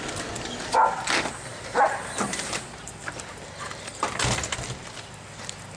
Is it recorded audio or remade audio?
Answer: recorded